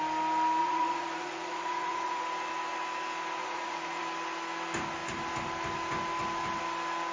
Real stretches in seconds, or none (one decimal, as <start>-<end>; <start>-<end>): 0.0-0.6; 2.2-3.4; 4.0-7.1